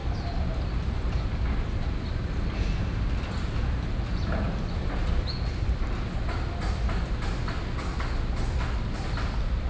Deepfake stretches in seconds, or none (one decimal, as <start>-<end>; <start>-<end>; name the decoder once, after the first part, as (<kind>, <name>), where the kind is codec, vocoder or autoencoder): 0.0-1.7 (vocoder, BigVGAN v2)